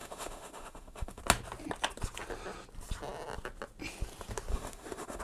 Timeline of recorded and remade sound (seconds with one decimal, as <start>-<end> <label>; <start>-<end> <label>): 0.0-1.2 remade; 1.2-4.5 recorded; 4.5-5.2 remade